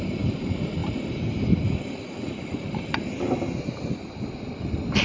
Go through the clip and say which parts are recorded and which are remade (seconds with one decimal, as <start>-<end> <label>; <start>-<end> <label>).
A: 0.0-5.0 recorded